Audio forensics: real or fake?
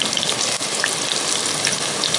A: real